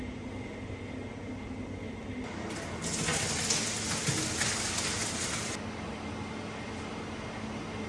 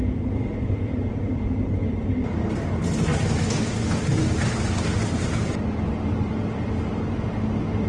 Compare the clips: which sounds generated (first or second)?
second